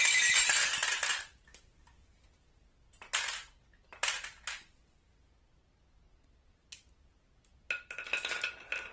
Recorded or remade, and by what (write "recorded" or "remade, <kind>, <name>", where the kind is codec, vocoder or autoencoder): recorded